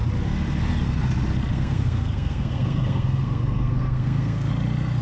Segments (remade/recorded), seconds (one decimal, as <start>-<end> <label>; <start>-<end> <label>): 0.0-1.5 recorded; 1.5-4.5 remade; 4.5-5.0 recorded